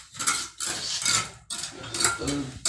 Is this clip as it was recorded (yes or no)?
yes